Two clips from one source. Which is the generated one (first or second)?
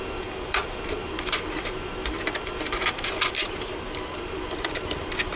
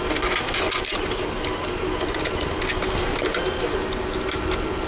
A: first